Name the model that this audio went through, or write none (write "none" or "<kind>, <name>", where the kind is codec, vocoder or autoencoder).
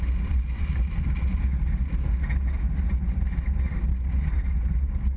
none